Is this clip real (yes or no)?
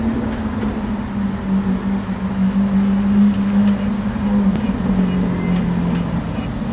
yes